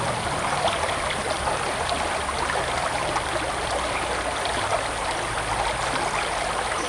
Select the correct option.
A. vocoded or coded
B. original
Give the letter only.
B